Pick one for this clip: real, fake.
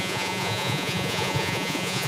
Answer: fake